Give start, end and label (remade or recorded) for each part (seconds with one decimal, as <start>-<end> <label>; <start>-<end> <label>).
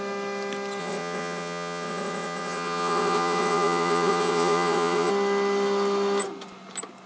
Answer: 0.0-0.8 recorded; 0.8-5.1 remade; 5.1-7.1 recorded